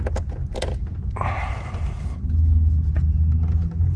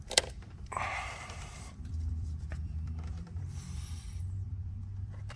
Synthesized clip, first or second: second